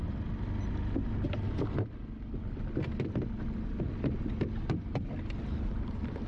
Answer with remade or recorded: recorded